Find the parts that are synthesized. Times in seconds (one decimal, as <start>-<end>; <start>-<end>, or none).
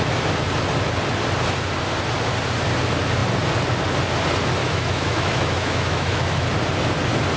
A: 4.6-6.5